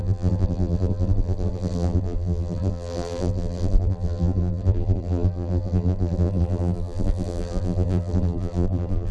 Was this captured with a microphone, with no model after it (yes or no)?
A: no